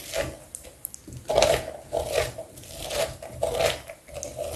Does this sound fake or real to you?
real